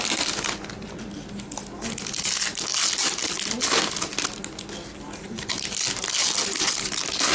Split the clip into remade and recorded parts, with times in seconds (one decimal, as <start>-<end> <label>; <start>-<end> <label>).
0.0-7.3 recorded

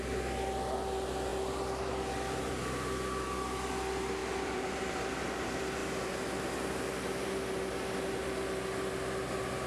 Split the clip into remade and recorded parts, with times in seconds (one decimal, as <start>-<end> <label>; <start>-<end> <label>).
0.0-4.2 recorded; 4.2-5.1 remade; 5.1-9.7 recorded

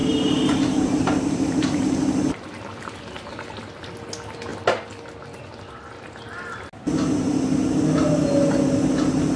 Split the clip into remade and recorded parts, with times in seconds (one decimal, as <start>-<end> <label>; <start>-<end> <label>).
0.0-1.8 remade; 1.8-9.4 recorded

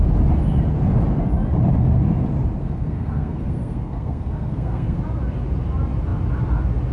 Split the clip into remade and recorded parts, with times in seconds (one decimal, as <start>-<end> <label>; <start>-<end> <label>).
0.0-2.6 recorded; 2.6-5.0 remade; 5.0-6.9 recorded